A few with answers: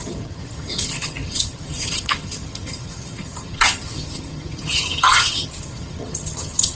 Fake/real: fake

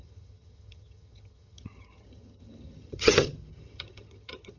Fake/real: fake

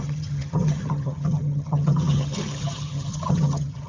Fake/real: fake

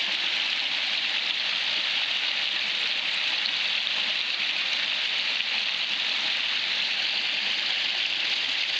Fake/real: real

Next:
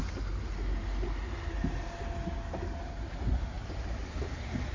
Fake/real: real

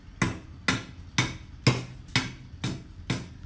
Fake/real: real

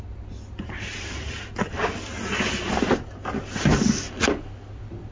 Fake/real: real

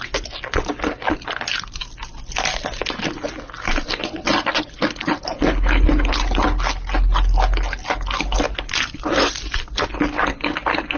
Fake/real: real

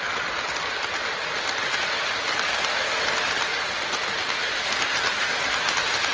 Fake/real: real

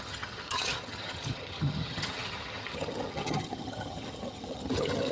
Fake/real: fake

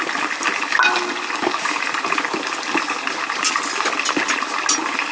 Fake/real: real